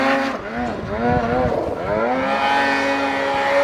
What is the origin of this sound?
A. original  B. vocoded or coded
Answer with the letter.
A